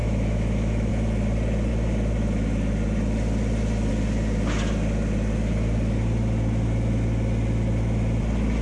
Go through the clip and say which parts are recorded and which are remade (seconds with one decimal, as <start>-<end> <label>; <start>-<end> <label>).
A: 0.0-0.9 remade; 0.9-8.6 recorded